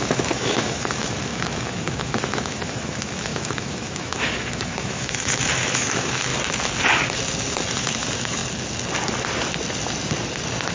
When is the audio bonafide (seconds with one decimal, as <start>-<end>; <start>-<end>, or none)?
6.3-7.8; 8.4-10.7